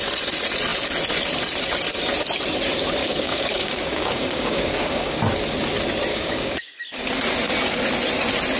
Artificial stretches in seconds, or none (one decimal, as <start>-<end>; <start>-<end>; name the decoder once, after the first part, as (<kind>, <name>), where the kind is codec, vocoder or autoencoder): 3.0-5.2 (codec, DAC); 6.1-6.8